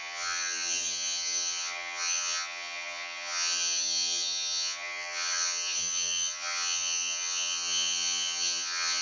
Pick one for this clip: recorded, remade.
remade